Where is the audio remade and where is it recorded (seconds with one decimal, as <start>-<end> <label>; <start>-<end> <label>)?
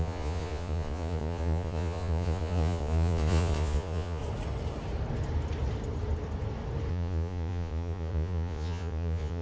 0.0-4.2 remade; 4.2-6.9 recorded; 6.9-9.4 remade